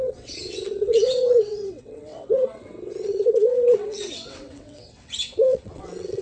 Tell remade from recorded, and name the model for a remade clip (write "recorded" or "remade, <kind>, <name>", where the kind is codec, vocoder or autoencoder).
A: remade, vocoder, WaveNeXt